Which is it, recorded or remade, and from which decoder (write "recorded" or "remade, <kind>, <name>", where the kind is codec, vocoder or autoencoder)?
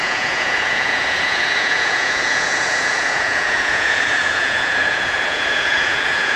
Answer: remade, vocoder, Vocos